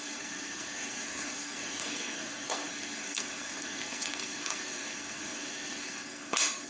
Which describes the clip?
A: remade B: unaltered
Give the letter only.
A